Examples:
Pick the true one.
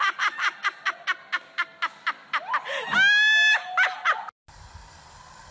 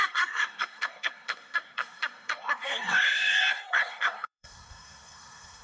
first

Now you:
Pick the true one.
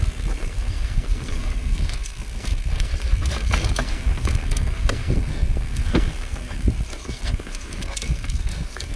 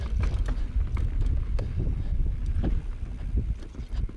second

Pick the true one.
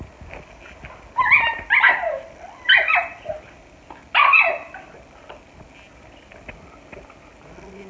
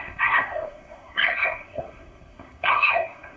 first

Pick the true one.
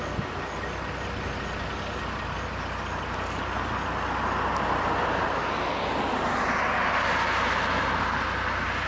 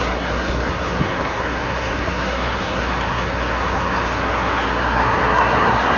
first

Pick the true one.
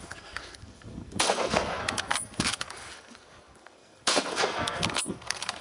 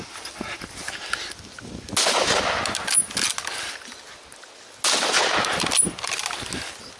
second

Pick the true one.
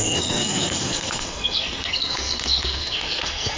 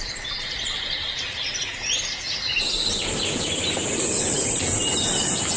second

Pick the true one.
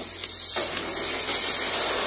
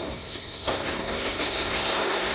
first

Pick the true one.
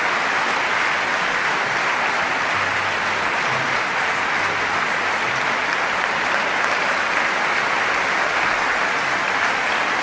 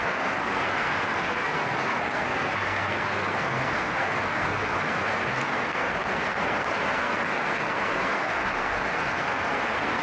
first